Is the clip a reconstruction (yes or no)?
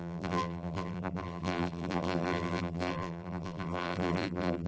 yes